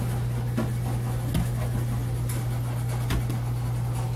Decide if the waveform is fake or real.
real